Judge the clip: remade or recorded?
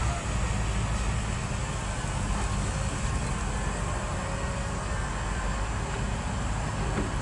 recorded